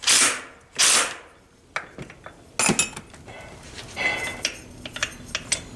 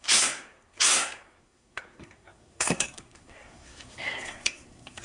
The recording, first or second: first